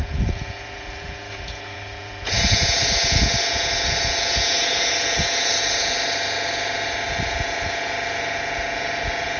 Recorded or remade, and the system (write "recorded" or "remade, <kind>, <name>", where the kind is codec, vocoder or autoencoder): remade, vocoder, Vocos